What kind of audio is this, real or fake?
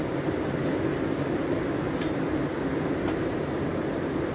real